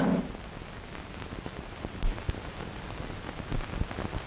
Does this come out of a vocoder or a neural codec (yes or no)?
no